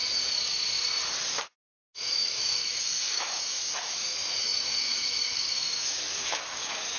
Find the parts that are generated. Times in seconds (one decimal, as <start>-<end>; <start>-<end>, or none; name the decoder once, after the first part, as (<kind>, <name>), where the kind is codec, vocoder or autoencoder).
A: 1.6-7.0 (autoencoder, DAC-VAE)